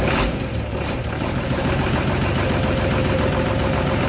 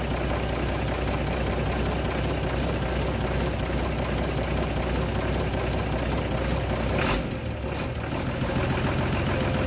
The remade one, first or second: first